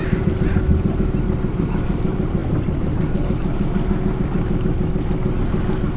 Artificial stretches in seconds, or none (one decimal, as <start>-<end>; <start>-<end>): none